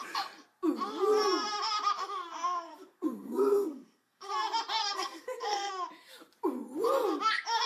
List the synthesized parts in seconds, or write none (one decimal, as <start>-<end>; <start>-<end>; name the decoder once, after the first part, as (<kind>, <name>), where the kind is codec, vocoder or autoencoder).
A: 2.7-4.3 (codec, SNAC); 4.8-5.7